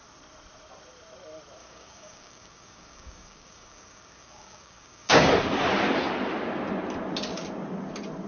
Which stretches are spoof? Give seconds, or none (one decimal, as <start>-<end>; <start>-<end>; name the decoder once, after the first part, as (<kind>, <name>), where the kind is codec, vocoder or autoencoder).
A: 1.6-5.3 (codec, DAC)